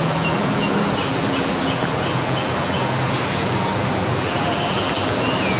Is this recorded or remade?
remade